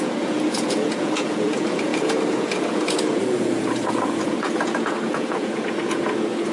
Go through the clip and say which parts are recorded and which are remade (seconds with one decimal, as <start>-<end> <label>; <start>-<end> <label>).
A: 0.0-6.5 remade